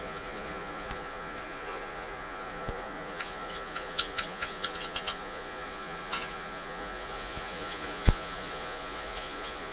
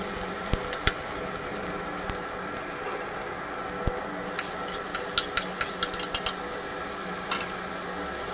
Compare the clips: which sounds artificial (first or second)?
first